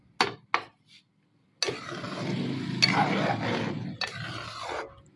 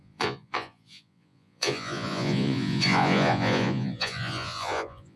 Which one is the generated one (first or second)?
second